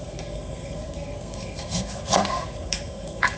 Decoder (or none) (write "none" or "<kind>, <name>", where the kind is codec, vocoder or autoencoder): codec, SNAC